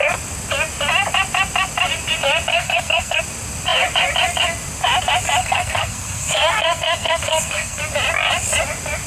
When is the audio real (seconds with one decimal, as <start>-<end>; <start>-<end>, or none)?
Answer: 0.0-2.5; 3.2-5.4; 7.8-9.1